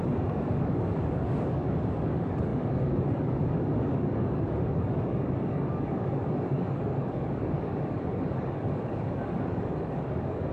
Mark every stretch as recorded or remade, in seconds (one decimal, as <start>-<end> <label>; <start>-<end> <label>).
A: 0.0-10.5 remade